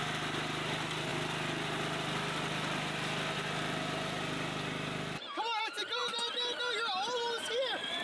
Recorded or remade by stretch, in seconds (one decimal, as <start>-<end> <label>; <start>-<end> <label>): 0.0-8.0 recorded